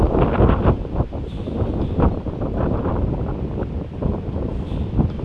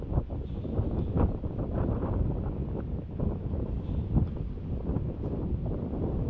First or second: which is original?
first